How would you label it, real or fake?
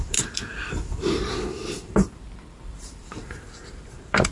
fake